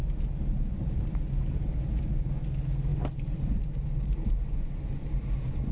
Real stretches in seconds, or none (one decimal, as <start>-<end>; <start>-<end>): 0.0-2.9; 4.3-5.7